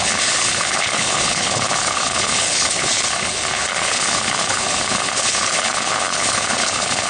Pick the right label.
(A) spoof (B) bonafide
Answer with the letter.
A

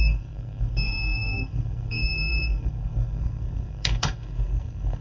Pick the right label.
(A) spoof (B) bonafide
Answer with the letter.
A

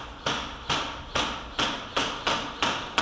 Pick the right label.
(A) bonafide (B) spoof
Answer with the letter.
A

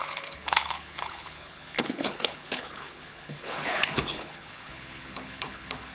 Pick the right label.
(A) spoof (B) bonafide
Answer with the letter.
A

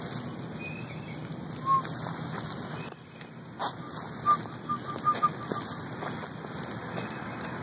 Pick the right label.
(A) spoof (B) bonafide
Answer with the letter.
B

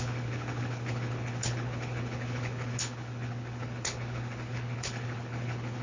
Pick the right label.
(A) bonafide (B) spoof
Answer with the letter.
B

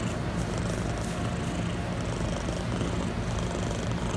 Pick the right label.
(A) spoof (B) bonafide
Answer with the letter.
B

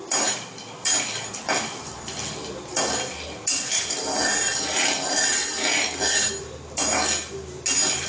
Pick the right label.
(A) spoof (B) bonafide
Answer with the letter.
B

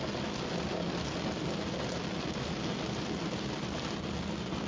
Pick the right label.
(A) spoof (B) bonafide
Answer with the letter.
B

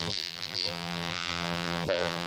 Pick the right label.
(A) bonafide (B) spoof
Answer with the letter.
B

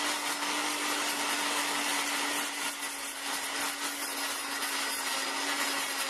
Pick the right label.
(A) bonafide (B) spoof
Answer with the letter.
A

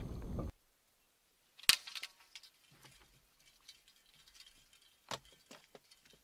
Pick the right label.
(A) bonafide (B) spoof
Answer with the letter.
A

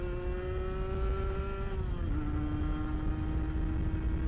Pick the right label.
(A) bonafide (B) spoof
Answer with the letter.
A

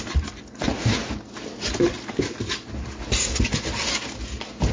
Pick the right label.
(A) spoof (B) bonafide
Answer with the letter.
B